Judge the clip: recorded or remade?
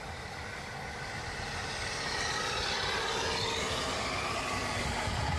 recorded